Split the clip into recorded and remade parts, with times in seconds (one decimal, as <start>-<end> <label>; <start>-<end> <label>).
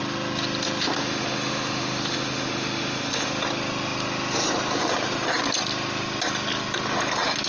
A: 0.0-1.0 recorded; 1.0-3.3 remade; 3.3-7.5 recorded